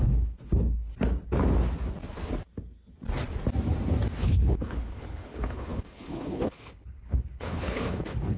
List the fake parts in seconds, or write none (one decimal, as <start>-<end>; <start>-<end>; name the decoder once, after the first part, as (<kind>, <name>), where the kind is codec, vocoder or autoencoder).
0.0-0.9 (codec, HILCodec); 4.2-8.4